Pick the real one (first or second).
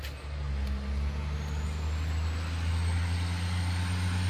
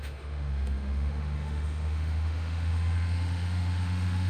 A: first